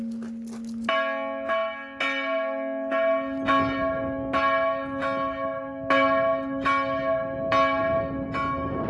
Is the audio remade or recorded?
recorded